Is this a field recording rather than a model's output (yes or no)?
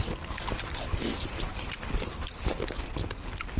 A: yes